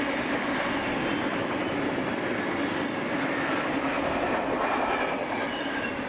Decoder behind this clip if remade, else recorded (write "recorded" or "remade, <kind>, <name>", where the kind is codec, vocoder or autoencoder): recorded